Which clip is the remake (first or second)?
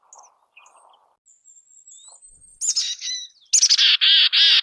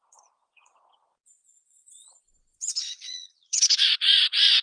second